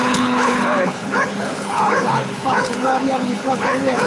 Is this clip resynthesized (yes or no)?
yes